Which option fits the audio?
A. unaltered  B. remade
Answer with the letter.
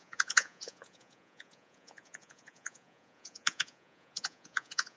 B